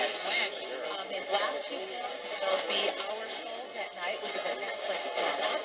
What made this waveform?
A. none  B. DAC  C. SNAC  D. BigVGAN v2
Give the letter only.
A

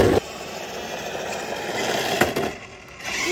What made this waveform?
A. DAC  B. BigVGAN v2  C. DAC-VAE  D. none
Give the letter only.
D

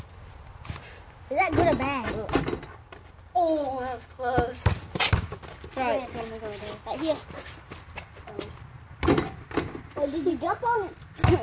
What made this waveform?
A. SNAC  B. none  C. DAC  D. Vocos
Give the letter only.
B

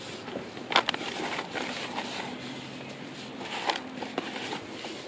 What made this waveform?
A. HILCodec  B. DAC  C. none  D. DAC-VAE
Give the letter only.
C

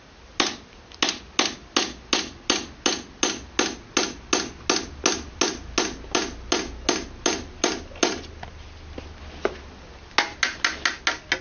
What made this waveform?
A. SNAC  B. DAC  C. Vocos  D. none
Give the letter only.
D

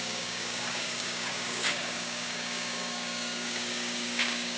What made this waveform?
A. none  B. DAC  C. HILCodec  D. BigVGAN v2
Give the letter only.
B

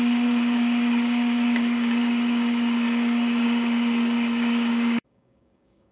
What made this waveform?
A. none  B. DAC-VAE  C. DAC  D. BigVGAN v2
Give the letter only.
C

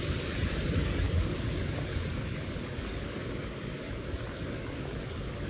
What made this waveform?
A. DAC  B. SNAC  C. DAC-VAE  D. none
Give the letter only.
A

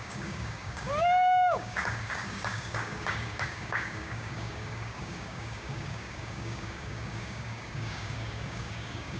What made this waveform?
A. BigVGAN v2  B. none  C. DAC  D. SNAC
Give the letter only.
C